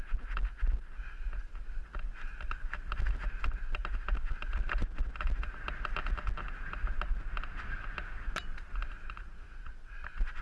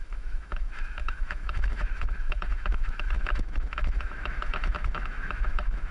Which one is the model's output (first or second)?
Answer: second